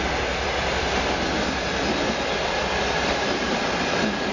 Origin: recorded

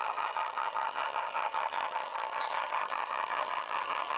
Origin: remade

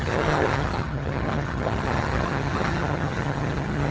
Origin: remade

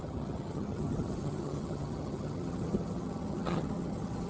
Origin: remade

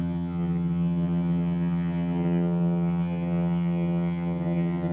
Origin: remade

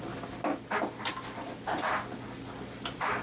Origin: recorded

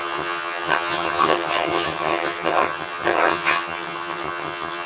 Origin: remade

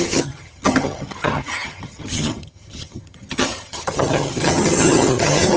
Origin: remade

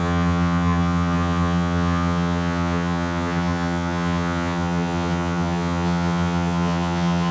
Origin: remade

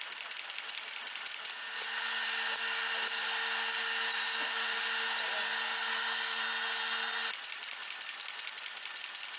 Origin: recorded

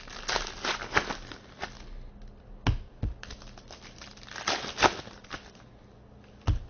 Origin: recorded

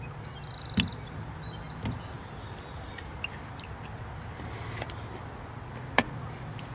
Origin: recorded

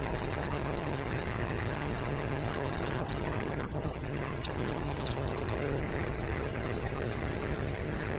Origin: remade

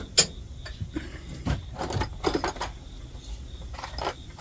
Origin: recorded